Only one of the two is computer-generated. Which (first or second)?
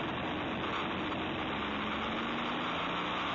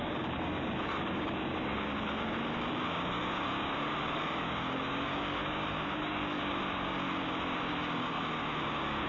second